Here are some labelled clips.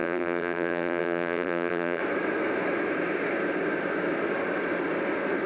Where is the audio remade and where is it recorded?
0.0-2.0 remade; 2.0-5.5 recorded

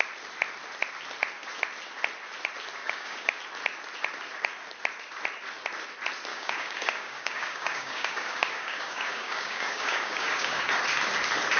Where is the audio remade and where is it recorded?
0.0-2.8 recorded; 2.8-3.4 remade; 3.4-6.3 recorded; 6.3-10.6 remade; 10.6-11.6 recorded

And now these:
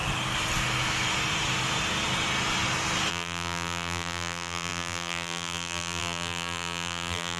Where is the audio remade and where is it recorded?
0.0-3.1 recorded; 3.1-7.4 remade

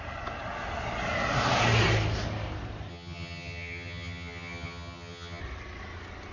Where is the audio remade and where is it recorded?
0.0-2.9 recorded; 2.9-5.4 remade; 5.4-6.3 recorded

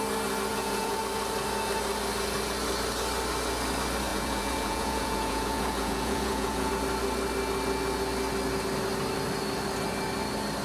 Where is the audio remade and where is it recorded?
0.0-0.5 recorded; 0.5-1.0 remade; 1.0-4.1 recorded; 4.1-6.7 remade; 6.7-10.6 recorded

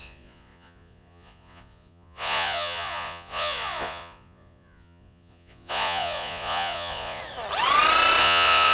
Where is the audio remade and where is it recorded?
0.0-7.2 remade; 7.2-8.2 recorded; 8.2-8.7 remade

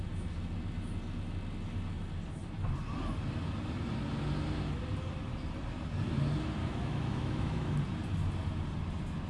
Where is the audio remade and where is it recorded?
0.0-6.6 recorded; 6.6-7.8 remade; 7.8-9.3 recorded

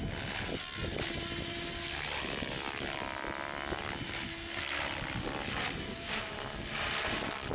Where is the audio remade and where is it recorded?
0.0-7.5 recorded